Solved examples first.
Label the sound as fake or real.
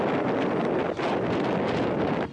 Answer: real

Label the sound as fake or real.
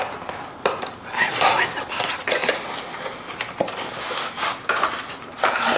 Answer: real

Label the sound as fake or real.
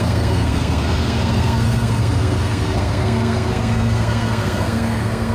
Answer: fake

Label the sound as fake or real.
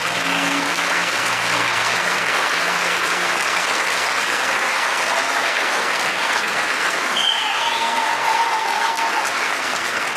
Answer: fake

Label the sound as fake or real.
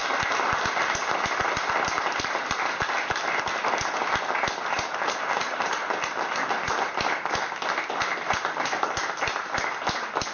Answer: real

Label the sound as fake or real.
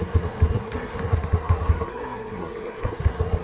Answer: fake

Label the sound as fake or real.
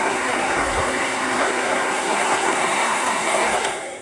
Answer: fake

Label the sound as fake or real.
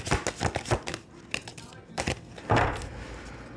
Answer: real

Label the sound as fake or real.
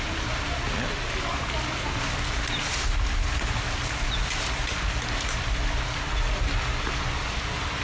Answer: real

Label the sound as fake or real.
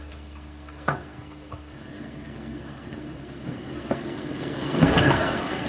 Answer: fake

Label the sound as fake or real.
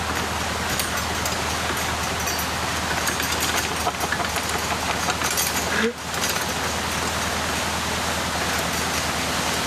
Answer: real